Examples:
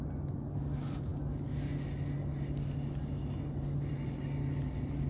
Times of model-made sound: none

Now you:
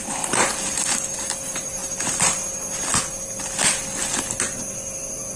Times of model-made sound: none

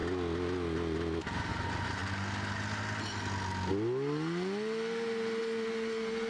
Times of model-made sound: none

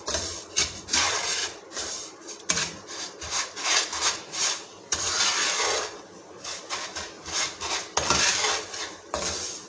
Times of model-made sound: 1.4-3.5